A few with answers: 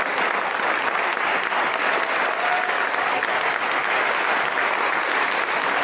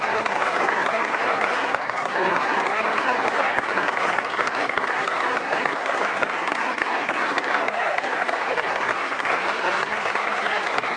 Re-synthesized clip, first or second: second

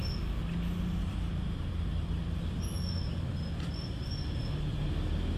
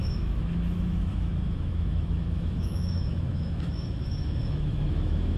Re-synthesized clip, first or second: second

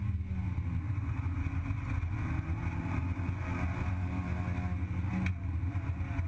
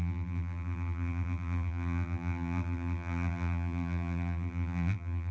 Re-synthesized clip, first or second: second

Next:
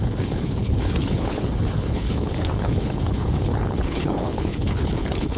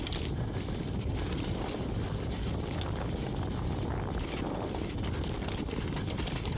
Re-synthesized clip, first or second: first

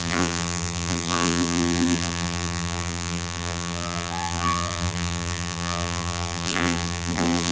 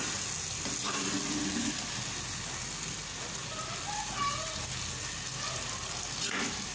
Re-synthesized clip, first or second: first